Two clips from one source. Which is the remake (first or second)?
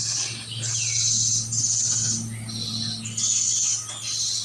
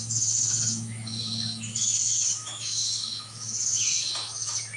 second